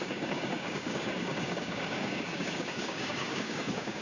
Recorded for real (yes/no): no